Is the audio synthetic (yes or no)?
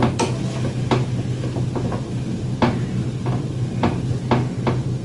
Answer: no